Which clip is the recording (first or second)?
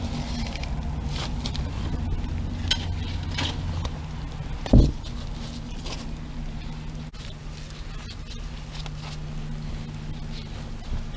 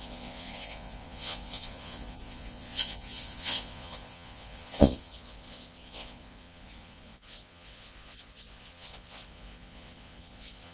first